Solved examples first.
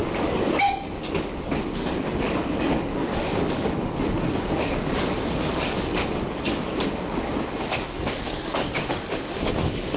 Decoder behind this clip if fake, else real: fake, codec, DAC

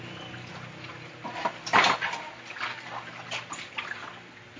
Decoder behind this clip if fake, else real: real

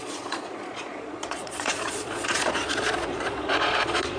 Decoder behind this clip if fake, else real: fake, vocoder, Vocos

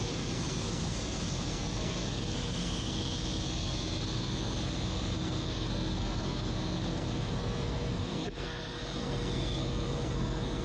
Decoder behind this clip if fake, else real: fake, codec, SNAC